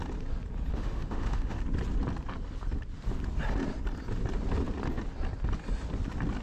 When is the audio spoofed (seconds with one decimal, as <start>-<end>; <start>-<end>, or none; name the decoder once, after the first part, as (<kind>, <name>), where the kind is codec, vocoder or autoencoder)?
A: 0.7-1.6 (autoencoder, DAC-VAE)